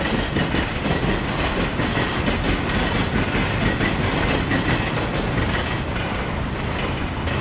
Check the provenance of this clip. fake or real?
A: real